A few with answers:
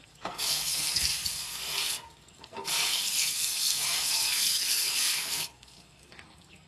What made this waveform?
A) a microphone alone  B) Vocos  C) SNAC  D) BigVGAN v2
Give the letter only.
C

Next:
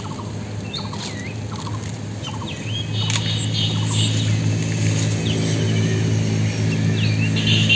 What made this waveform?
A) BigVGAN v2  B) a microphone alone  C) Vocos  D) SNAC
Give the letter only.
B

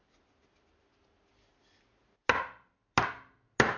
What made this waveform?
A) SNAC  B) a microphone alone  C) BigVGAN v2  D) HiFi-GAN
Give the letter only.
B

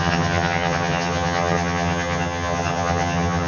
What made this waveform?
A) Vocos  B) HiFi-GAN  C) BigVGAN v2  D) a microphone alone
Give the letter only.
B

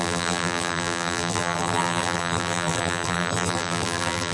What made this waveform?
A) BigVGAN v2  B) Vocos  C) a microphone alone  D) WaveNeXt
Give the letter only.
A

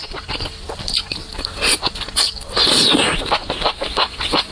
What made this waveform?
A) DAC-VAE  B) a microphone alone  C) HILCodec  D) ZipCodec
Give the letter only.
B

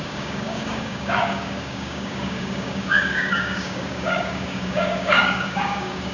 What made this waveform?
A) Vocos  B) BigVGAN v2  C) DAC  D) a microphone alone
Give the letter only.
C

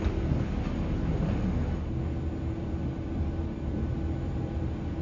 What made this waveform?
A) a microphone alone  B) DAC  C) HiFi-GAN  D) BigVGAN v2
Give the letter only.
A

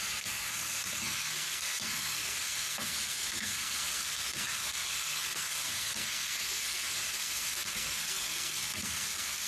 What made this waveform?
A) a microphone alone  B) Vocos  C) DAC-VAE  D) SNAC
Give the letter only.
D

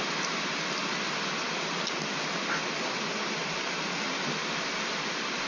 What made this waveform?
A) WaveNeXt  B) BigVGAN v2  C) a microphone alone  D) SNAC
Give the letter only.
C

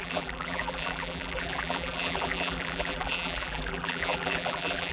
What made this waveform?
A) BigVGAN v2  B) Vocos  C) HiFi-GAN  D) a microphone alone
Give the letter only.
A